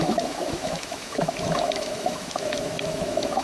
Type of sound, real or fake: fake